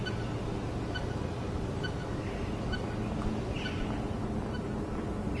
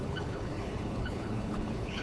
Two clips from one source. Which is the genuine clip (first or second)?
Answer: first